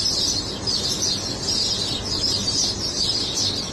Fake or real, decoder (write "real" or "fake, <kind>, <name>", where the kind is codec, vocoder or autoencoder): real